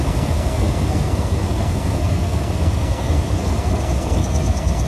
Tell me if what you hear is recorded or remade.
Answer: remade